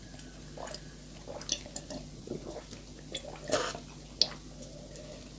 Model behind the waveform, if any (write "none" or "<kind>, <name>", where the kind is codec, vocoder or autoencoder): none